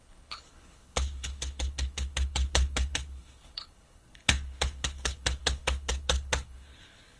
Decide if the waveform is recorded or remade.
remade